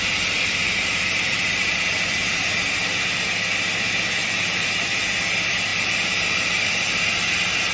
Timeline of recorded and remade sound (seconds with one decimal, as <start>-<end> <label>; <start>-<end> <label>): 0.0-0.6 recorded; 0.6-2.5 remade; 2.5-4.2 recorded; 4.2-5.0 remade; 5.0-5.7 recorded; 5.7-6.7 remade; 6.7-7.7 recorded